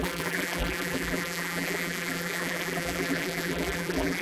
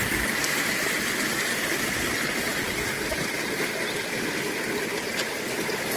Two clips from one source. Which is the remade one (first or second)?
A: first